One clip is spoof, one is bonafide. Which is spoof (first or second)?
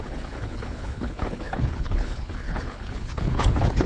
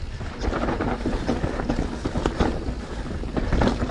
first